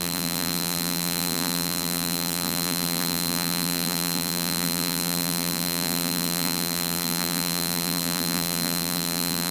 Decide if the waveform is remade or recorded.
remade